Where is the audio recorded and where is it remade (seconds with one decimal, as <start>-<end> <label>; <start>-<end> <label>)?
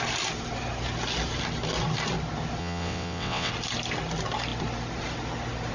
0.0-2.6 recorded; 2.6-3.5 remade; 3.5-5.7 recorded